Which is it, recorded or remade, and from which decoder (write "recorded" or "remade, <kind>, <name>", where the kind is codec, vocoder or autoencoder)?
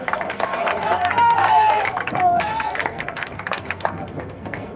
remade, codec, SNAC